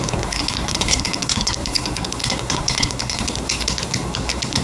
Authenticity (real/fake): fake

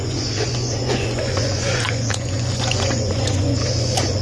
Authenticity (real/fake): fake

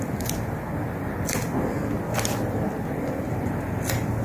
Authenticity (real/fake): real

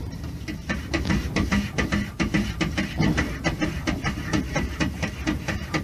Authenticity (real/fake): fake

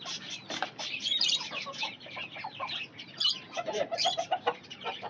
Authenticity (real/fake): fake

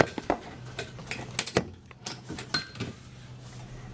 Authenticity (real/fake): real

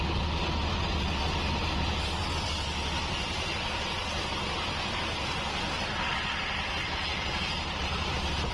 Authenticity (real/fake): real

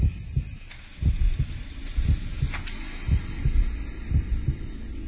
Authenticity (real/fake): real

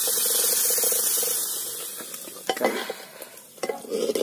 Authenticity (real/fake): real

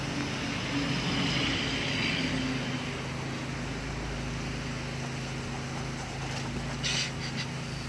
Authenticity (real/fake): real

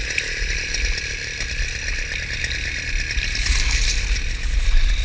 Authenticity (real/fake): real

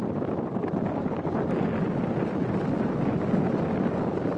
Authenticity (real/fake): real